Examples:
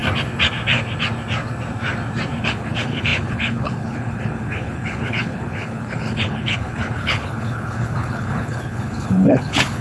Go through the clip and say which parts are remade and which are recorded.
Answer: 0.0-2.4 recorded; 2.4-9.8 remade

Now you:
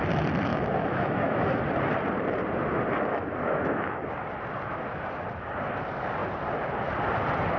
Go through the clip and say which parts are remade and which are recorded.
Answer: 0.0-0.5 recorded; 0.5-1.6 remade; 1.6-3.1 recorded; 3.1-4.1 remade; 4.1-7.6 recorded